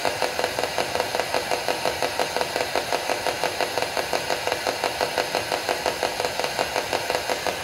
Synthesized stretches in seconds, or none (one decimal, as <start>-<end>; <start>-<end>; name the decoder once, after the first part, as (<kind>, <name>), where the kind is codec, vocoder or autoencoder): none